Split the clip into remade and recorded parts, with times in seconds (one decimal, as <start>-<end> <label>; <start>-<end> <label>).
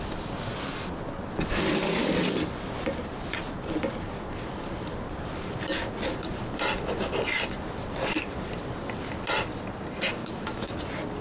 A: 0.0-10.2 recorded; 10.2-10.7 remade; 10.7-11.2 recorded